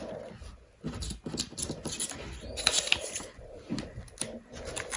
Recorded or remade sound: recorded